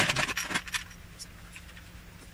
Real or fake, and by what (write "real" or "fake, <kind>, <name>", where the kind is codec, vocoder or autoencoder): real